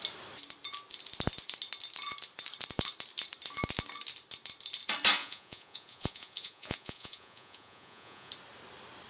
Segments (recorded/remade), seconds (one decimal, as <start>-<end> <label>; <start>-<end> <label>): 0.0-5.2 recorded; 5.2-8.3 remade; 8.3-9.1 recorded